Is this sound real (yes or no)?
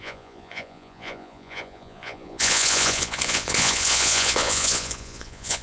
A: no